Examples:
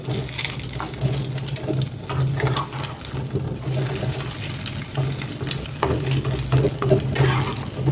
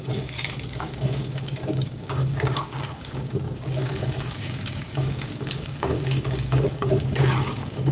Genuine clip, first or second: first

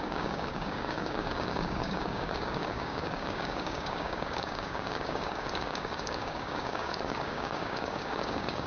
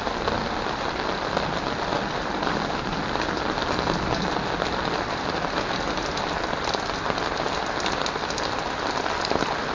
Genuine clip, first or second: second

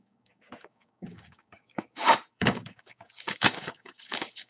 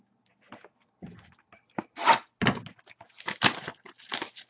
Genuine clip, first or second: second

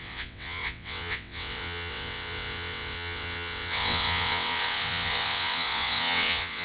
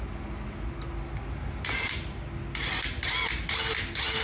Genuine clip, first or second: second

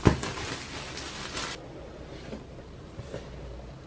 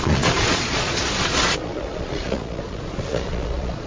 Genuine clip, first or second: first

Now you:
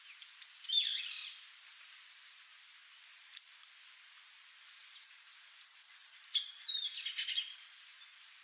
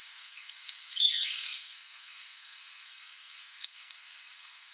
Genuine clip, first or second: first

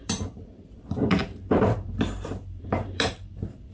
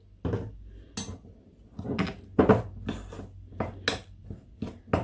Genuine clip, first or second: second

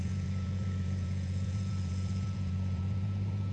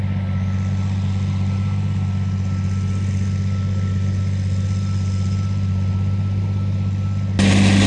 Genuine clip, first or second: second